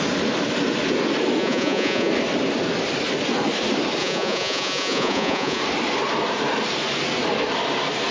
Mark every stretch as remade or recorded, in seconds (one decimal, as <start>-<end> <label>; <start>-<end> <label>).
0.0-1.4 recorded; 1.4-2.1 remade; 2.1-4.0 recorded; 4.0-5.6 remade; 5.6-8.1 recorded